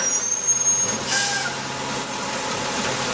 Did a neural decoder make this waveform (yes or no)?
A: no